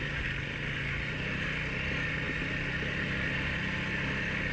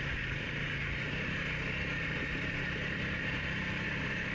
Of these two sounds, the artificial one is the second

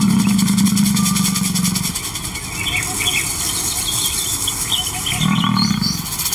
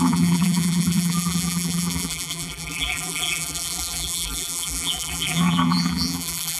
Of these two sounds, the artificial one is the second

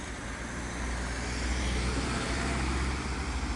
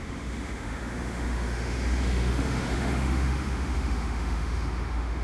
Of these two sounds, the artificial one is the second